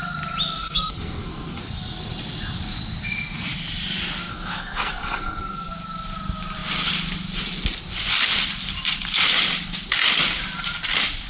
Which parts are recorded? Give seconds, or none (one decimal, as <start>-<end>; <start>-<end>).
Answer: 0.0-0.6; 1.6-4.3; 5.7-11.3